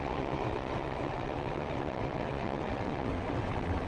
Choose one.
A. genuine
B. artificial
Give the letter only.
B